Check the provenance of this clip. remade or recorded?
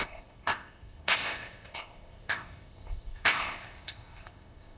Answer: remade